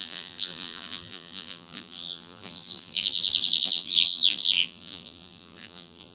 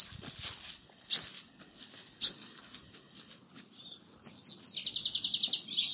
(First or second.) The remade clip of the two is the first